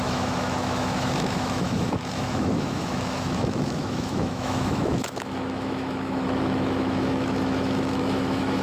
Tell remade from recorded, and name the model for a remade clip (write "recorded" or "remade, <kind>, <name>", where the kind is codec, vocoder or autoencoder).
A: remade, autoencoder, DAC-VAE